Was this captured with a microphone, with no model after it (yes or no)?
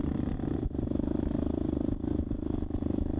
yes